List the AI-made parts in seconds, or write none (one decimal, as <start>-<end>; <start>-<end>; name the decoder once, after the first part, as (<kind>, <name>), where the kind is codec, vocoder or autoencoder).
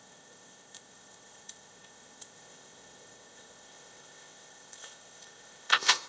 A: 0.0-6.1 (codec, ZipCodec)